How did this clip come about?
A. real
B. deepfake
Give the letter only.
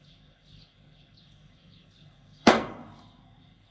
B